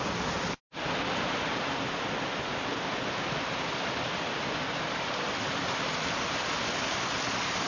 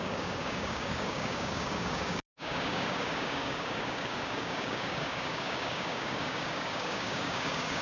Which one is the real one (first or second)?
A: first